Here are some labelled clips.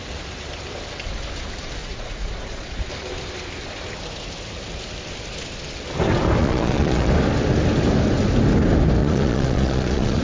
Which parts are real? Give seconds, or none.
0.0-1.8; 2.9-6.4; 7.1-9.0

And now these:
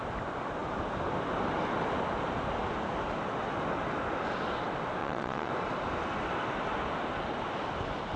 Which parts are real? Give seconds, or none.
0.0-5.0; 5.5-8.2

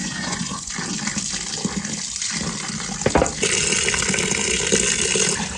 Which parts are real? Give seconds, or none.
0.7-5.6

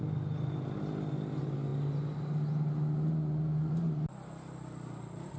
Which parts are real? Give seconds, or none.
0.0-5.4

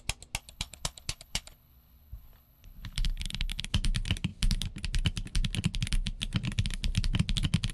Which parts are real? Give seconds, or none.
0.0-0.4; 3.6-7.7

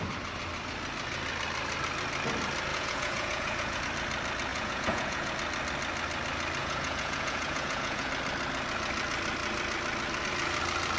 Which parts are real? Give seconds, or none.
0.0-2.7; 3.8-4.5; 5.3-6.6; 8.1-11.0